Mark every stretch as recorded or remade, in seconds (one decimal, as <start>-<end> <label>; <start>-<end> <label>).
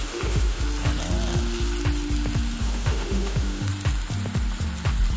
0.0-0.6 remade; 0.6-2.6 recorded; 2.6-3.7 remade; 3.7-5.2 recorded